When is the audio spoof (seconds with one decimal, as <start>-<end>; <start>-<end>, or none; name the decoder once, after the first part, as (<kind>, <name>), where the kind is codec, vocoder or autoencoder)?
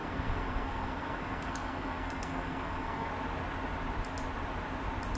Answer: 0.0-3.1 (codec, SNAC)